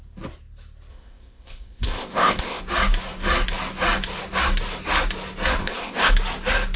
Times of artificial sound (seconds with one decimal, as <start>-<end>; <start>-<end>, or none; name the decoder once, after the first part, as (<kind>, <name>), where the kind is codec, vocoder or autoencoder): 0.9-2.6 (codec, ZipCodec); 5.6-6.1